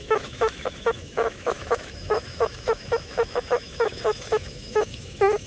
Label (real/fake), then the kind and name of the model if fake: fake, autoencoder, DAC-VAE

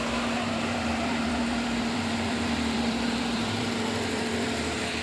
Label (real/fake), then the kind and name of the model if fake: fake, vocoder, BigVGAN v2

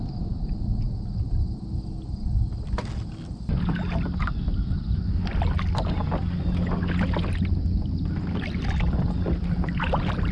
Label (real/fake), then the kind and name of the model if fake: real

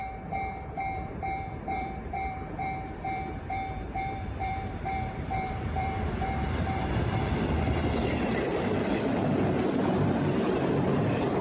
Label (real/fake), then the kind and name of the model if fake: fake, vocoder, BigVGAN v2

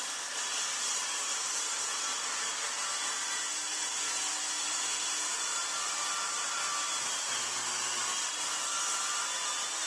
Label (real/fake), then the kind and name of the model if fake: real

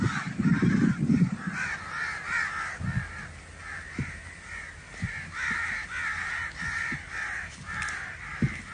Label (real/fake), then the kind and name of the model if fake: real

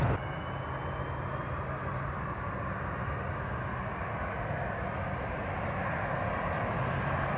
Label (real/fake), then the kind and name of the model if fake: real